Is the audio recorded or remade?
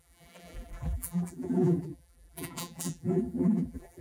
remade